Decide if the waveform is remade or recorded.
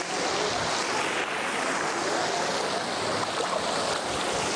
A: recorded